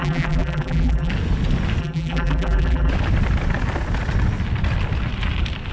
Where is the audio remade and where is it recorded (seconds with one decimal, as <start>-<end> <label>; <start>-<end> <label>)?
0.0-1.1 remade; 1.1-1.8 recorded; 1.8-2.9 remade; 2.9-5.7 recorded